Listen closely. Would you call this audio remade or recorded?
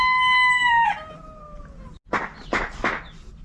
recorded